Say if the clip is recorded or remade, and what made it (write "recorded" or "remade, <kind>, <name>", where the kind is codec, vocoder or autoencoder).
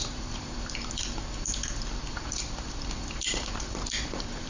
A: remade, vocoder, BigVGAN v2